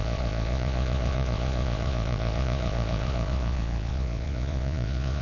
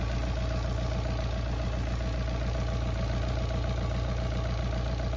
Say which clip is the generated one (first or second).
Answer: first